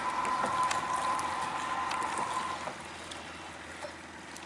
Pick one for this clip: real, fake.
real